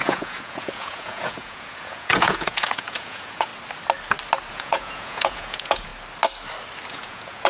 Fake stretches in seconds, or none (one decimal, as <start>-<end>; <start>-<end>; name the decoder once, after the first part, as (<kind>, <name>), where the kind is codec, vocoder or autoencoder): 0.0-3.5 (vocoder, Vocos); 4.5-5.9; 6.9-7.5